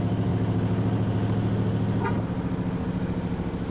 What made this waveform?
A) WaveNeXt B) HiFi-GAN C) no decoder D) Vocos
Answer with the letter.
C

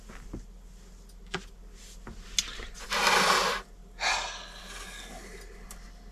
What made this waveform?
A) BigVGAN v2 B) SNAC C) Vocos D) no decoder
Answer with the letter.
D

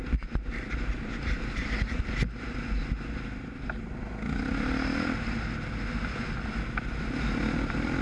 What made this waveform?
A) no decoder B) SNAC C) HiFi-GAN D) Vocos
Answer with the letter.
A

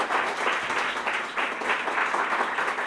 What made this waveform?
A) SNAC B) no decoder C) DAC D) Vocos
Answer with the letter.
B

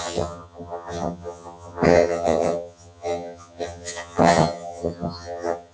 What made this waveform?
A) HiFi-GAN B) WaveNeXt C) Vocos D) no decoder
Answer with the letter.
A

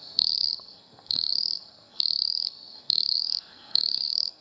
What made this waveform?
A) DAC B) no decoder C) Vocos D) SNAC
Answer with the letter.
D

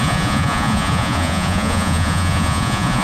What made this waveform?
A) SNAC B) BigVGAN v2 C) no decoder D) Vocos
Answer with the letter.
D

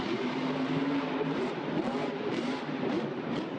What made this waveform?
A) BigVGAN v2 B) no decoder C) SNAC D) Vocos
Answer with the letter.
A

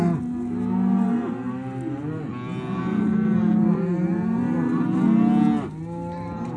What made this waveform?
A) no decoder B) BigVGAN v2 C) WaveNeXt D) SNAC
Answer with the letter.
A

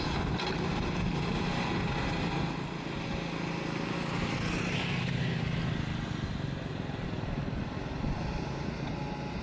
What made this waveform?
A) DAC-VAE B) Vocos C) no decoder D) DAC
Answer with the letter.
C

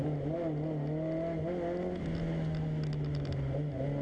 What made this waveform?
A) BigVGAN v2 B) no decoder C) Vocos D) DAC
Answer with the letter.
B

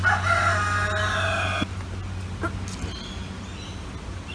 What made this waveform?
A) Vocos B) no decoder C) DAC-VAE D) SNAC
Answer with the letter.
B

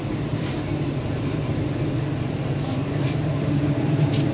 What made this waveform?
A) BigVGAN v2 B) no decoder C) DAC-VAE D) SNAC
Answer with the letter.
A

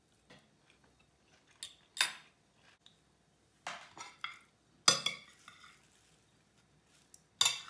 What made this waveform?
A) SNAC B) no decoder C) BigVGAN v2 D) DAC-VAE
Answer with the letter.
B